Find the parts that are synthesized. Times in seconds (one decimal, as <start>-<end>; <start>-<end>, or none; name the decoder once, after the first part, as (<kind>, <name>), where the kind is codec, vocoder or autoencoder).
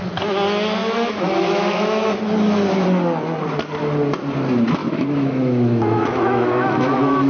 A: 0.8-2.2 (autoencoder, DAC-VAE); 4.8-7.3